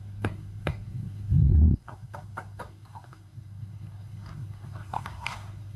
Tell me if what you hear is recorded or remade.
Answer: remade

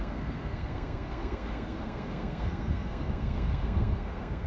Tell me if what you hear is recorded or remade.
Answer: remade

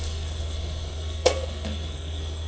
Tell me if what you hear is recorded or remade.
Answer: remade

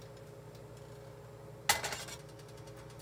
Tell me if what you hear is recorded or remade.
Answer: recorded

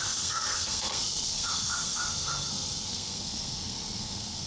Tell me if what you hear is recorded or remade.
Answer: remade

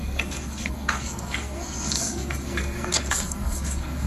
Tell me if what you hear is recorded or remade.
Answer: remade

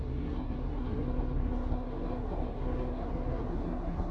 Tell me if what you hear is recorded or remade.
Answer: remade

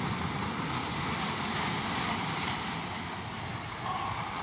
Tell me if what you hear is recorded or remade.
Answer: recorded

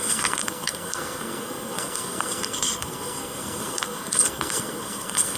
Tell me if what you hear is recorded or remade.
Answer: remade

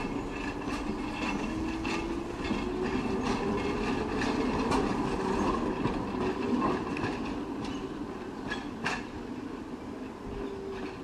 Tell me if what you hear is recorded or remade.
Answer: recorded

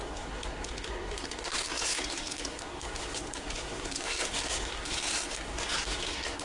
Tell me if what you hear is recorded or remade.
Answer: remade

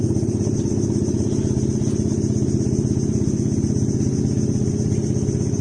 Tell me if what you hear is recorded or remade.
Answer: recorded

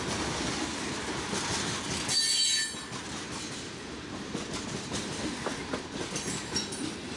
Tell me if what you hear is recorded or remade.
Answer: recorded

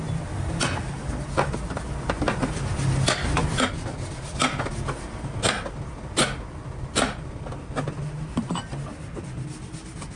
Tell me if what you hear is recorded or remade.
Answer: recorded